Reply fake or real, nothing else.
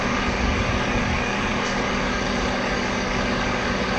fake